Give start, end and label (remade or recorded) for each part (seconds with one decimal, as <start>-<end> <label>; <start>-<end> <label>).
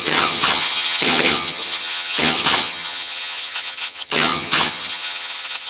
0.0-5.7 remade